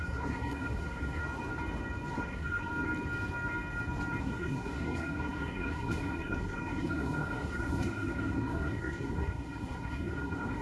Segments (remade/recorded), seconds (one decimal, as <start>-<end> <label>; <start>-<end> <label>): 0.0-1.2 remade; 1.2-2.1 recorded; 2.1-2.7 remade; 2.7-4.2 recorded; 4.2-10.6 remade